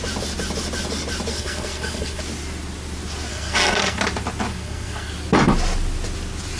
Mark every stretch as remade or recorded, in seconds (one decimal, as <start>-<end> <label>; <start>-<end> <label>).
0.0-1.3 recorded; 1.3-2.2 remade; 2.2-3.3 recorded; 3.3-4.0 remade; 4.0-4.5 recorded; 4.5-5.1 remade; 5.1-6.6 recorded